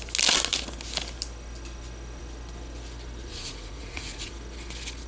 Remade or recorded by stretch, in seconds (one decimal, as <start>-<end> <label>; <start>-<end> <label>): 0.0-3.3 recorded; 3.3-4.3 remade; 4.3-5.1 recorded